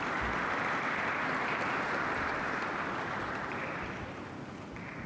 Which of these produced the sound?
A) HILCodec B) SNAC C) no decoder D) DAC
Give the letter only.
C